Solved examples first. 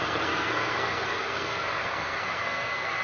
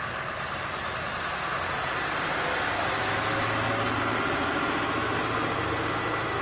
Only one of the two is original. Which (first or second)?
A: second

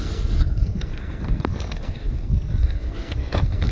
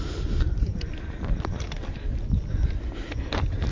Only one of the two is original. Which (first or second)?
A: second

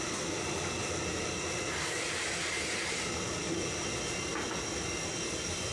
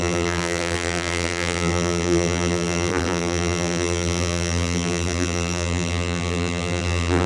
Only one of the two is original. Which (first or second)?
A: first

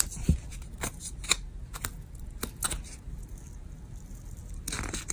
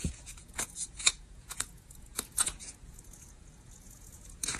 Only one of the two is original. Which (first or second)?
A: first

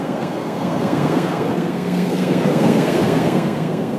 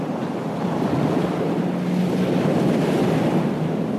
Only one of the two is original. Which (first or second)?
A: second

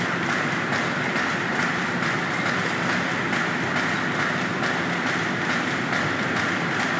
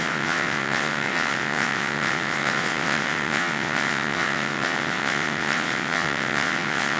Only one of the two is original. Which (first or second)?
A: first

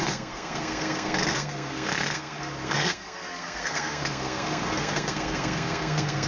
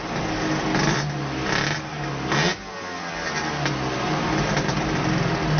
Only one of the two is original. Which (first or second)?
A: second